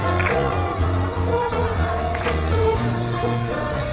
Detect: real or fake fake